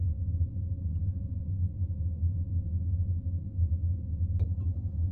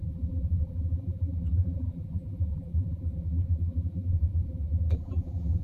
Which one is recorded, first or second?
first